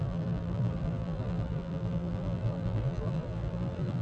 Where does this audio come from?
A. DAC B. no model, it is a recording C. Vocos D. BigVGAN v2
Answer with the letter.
D